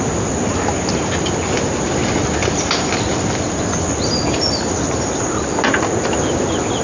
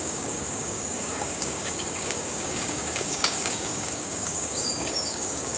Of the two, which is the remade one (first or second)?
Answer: second